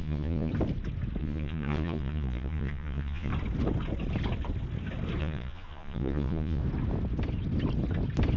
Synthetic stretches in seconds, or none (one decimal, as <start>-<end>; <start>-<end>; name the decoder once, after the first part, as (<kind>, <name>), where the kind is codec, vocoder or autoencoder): 0.0-0.5 (vocoder, Vocos); 1.2-3.3; 5.2-6.6